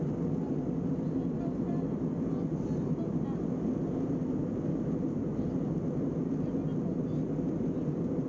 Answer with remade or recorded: recorded